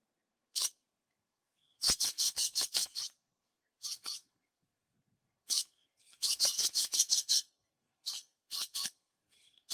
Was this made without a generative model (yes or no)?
no